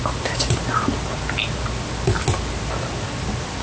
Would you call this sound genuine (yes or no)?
yes